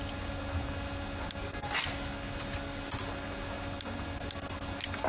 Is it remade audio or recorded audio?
recorded